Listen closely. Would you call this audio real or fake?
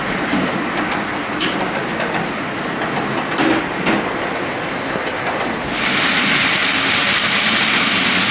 real